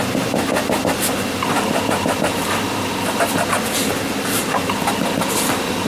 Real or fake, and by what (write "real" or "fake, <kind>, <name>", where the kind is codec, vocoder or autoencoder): real